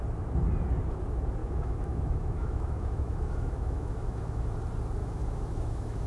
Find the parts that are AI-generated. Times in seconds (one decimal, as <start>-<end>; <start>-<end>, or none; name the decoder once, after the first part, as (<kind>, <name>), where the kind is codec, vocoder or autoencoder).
1.4-4.5 (autoencoder, DAC-VAE); 5.0-6.1